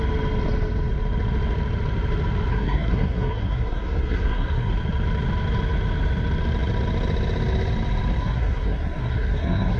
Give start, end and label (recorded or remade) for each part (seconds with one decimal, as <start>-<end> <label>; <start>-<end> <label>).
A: 0.0-2.5 recorded; 2.5-4.7 remade; 4.7-8.2 recorded; 8.2-9.8 remade